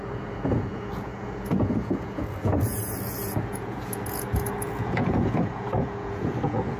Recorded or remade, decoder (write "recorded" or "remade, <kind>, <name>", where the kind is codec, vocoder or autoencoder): remade, vocoder, Vocos